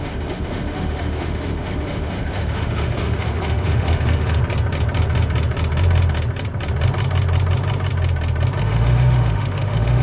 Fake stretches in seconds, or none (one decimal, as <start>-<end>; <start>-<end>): 0.0-4.4; 8.6-10.0